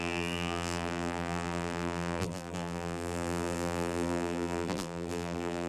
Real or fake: fake